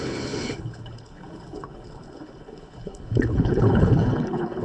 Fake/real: fake